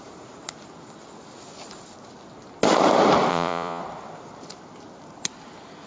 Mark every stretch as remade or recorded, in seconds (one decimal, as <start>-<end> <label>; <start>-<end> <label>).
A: 0.0-3.3 recorded; 3.3-3.8 remade; 3.8-5.9 recorded

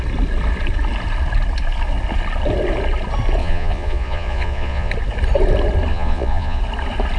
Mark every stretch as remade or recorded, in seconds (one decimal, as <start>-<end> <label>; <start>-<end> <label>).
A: 0.0-3.4 recorded; 3.4-4.9 remade; 4.9-5.9 recorded; 5.9-6.6 remade; 6.6-7.2 recorded

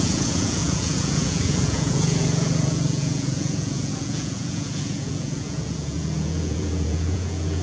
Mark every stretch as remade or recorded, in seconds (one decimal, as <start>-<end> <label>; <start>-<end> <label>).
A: 0.0-7.6 remade

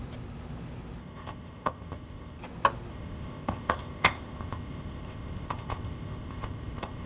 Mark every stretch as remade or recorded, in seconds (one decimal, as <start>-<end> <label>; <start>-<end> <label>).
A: 0.0-1.0 recorded; 1.0-2.4 remade; 2.4-2.9 recorded; 2.9-7.1 remade

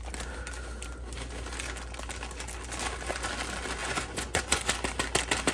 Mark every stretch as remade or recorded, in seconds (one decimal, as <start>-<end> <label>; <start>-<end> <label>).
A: 0.0-3.8 recorded; 3.8-4.7 remade; 4.7-5.5 recorded

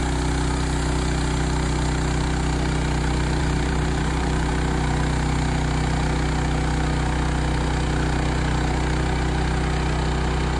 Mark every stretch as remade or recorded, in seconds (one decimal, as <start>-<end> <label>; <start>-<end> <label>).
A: 0.0-3.4 recorded; 3.4-4.5 remade; 4.5-10.6 recorded